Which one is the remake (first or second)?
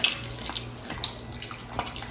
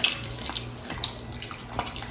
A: second